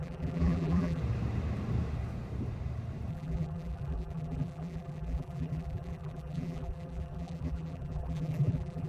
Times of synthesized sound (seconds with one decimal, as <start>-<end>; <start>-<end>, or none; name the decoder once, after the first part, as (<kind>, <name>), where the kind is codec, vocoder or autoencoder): 0.0-1.0 (vocoder, BigVGAN v2); 3.1-8.9